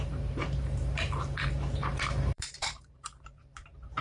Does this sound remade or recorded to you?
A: remade